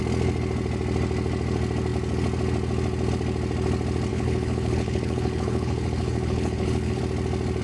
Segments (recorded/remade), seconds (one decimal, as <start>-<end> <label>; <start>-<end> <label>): 0.0-4.1 recorded; 4.1-7.0 remade; 7.0-7.6 recorded